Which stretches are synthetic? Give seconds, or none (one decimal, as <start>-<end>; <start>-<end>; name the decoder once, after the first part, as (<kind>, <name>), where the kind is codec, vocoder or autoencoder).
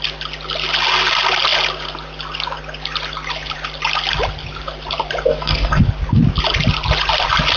5.3-5.8 (codec, SNAC)